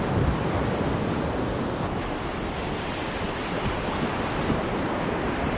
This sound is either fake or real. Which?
real